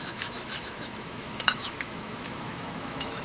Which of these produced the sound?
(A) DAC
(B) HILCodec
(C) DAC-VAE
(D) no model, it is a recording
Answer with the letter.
C